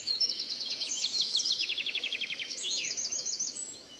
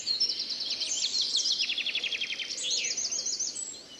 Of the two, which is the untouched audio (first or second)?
second